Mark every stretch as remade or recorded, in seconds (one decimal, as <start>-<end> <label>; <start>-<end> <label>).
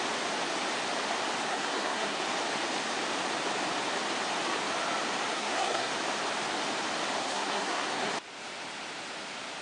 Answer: 0.0-1.5 recorded; 1.5-2.2 remade; 2.2-5.3 recorded; 5.3-5.9 remade; 5.9-7.2 recorded; 7.2-8.1 remade; 8.1-9.6 recorded